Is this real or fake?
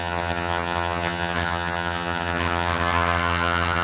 fake